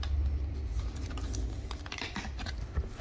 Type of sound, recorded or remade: recorded